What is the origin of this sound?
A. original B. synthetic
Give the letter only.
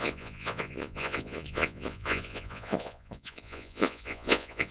B